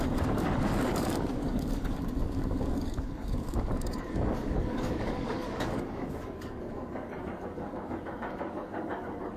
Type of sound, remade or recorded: remade